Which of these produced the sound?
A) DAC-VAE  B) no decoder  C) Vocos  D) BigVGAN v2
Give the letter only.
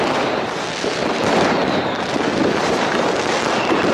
B